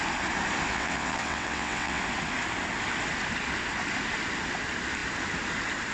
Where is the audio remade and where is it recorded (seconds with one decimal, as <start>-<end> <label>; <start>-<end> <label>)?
0.0-0.7 recorded; 0.7-2.0 remade; 2.0-5.9 recorded